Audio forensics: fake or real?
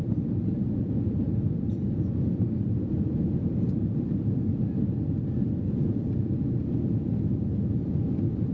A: real